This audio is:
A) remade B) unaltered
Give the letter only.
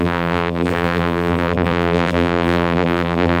A